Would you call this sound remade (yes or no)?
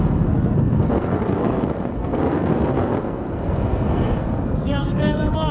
yes